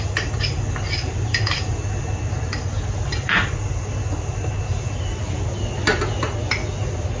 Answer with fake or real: real